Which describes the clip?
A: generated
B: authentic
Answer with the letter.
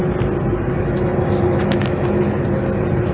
B